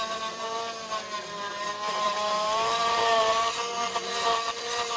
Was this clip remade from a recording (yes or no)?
yes